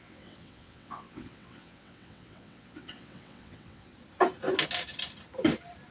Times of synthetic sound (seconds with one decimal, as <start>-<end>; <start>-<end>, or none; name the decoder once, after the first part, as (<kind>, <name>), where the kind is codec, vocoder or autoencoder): 0.0-3.9 (vocoder, WaveNeXt)